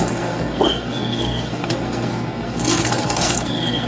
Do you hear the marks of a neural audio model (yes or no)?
yes